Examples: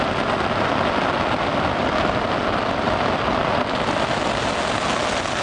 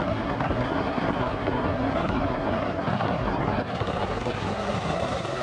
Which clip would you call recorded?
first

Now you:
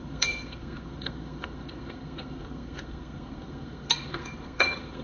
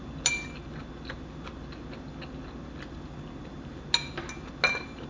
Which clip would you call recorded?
second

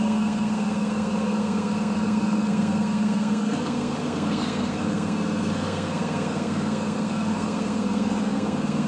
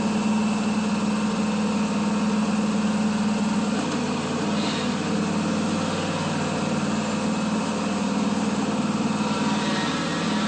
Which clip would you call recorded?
second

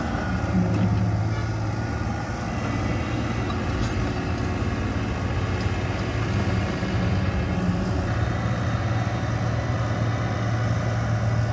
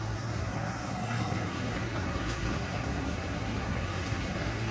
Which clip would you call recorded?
first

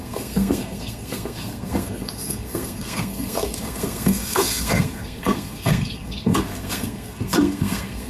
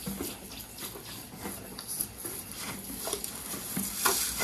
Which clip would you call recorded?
second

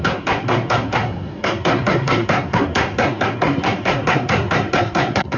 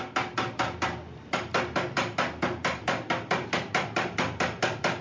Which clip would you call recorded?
second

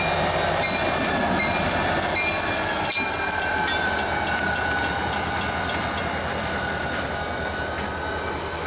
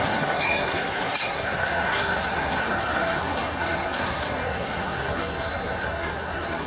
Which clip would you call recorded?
first